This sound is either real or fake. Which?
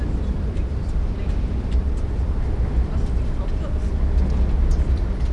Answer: real